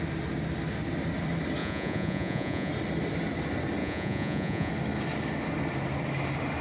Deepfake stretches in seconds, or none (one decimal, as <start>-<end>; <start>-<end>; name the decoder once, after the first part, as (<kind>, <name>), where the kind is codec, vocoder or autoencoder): 1.6-2.7 (vocoder, Vocos); 3.8-4.7